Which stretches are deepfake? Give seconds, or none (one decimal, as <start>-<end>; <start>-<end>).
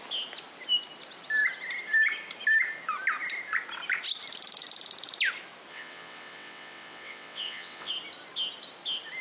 5.7-7.9